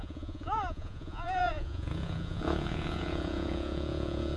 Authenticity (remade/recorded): remade